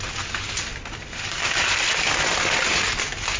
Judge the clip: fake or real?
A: real